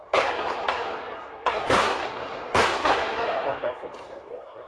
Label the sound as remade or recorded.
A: remade